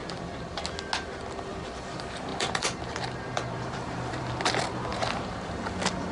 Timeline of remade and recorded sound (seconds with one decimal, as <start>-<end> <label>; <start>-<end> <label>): 0.0-0.6 remade; 0.6-2.3 recorded; 2.3-4.2 remade; 4.2-4.9 recorded; 4.9-5.5 remade; 5.5-6.1 recorded